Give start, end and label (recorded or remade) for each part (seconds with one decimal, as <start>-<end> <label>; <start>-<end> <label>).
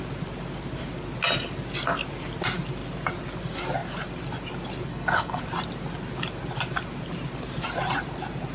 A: 0.0-4.9 recorded; 4.9-5.4 remade; 5.4-8.5 recorded